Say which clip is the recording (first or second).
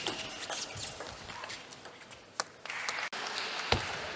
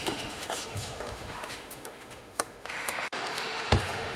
first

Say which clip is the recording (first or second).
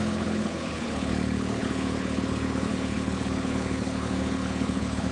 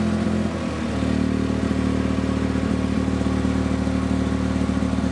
second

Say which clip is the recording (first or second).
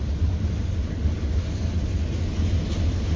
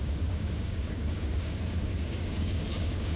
first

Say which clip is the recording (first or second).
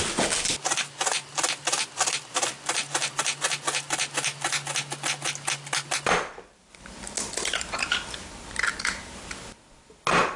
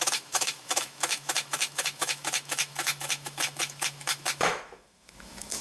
first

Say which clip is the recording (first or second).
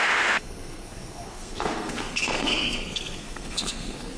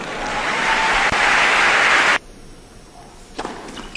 second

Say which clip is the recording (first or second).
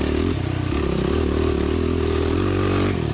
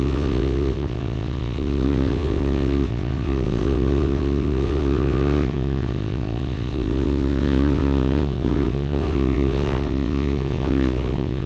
first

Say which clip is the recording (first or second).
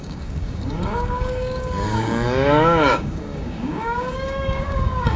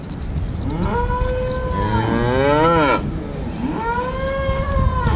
second